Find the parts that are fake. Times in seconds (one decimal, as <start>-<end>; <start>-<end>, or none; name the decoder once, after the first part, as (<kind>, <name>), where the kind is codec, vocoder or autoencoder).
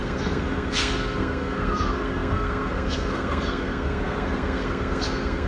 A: 0.0-5.5 (codec, SNAC)